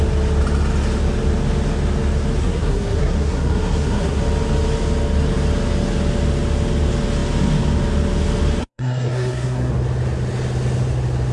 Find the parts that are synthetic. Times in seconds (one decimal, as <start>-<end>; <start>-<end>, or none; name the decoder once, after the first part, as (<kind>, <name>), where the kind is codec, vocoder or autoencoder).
2.4-4.2 (codec, SNAC); 8.6-9.7